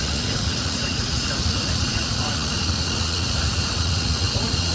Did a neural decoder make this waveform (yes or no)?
yes